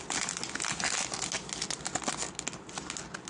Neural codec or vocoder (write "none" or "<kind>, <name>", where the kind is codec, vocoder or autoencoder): none